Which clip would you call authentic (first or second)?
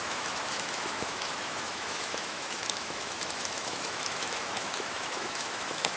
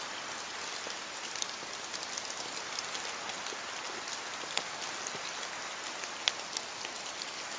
second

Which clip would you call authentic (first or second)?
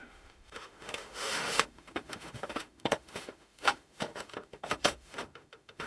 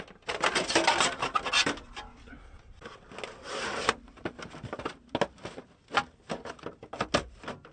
second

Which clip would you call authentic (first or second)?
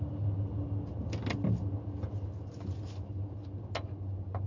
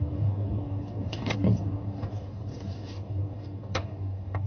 first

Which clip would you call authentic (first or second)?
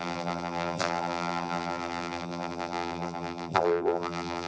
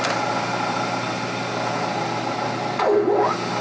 second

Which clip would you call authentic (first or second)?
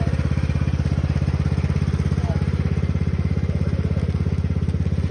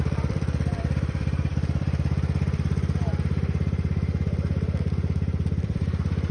first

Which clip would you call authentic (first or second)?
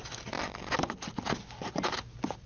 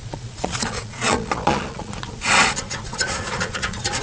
first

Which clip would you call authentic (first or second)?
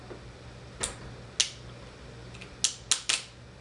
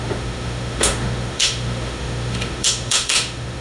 first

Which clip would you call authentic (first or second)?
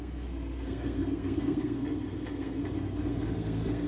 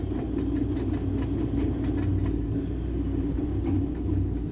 second